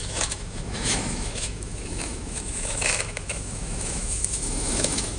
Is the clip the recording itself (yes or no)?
no